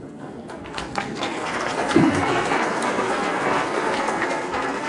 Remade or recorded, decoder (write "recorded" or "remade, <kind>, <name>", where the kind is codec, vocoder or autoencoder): remade, codec, SNAC